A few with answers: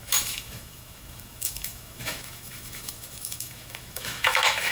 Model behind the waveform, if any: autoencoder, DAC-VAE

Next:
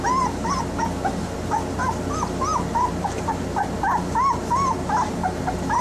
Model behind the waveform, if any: none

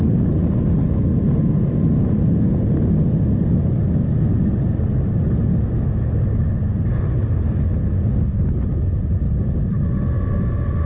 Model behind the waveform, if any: none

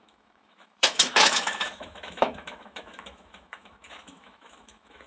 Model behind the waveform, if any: autoencoder, DAC-VAE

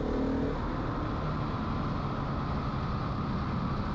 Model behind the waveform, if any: none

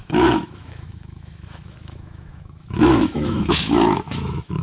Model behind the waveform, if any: autoencoder, DAC-VAE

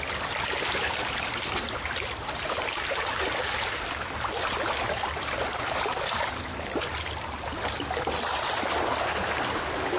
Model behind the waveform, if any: none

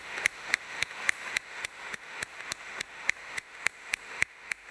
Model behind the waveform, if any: autoencoder, DAC-VAE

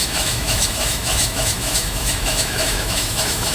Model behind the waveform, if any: autoencoder, DAC-VAE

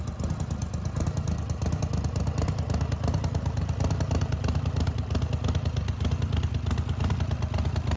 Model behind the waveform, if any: none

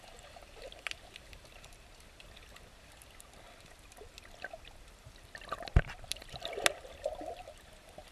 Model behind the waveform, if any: none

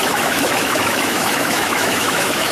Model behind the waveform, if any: autoencoder, DAC-VAE